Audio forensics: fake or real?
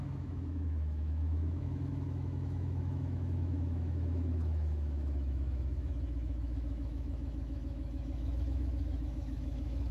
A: fake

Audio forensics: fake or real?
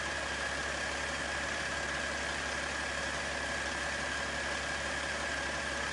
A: real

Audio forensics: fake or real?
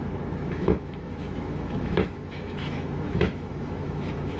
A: fake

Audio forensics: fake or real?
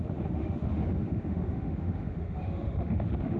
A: fake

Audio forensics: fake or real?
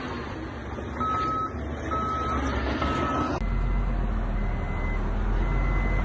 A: real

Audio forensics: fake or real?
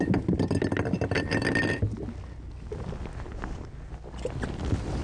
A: real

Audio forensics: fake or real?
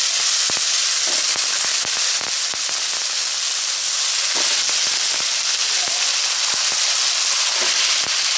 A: real